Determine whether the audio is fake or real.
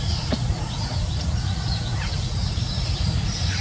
fake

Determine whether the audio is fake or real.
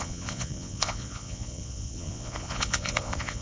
fake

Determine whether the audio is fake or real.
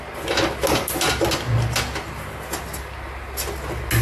real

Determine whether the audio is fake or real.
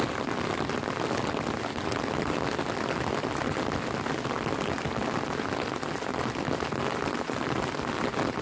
real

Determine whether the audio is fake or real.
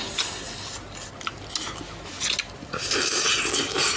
real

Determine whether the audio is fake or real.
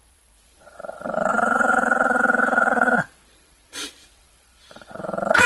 fake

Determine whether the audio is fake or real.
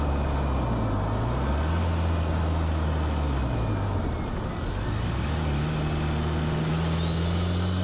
real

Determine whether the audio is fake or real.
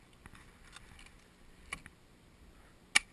real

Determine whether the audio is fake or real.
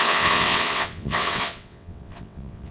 fake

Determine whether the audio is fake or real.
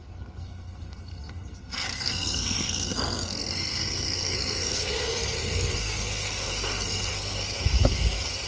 fake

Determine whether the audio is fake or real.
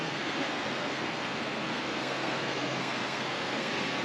fake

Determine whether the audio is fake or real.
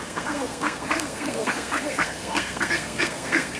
fake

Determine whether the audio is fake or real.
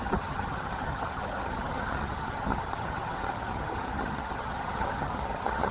fake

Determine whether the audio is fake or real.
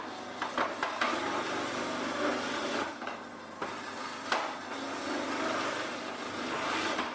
real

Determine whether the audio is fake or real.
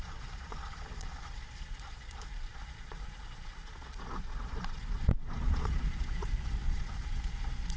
fake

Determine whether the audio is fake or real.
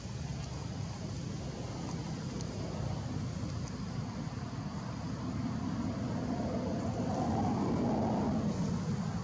real